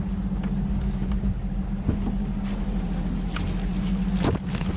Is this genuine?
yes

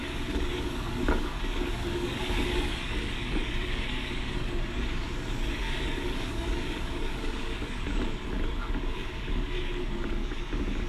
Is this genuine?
no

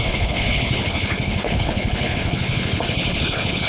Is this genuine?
no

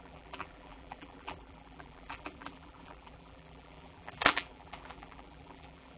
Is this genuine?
no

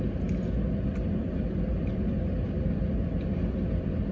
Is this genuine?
yes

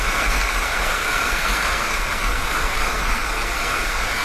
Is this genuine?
no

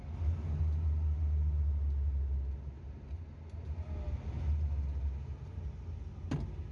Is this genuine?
yes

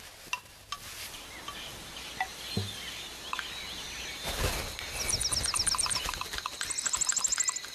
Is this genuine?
yes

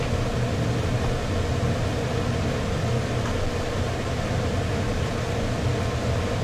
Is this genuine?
yes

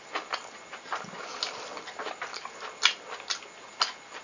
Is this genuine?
yes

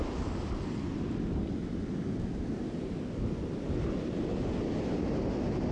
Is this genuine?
yes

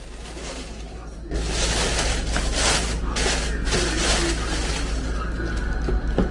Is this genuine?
yes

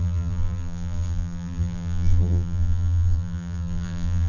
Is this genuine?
no